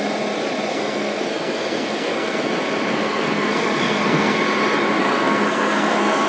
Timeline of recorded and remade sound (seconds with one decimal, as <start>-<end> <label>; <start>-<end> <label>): 0.0-0.7 recorded; 0.7-2.5 remade; 2.5-2.9 recorded; 2.9-4.4 remade; 4.4-5.0 recorded; 5.0-6.3 remade